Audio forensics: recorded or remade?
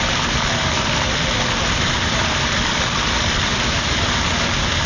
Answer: remade